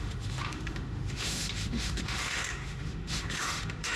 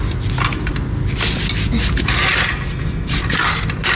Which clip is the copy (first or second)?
first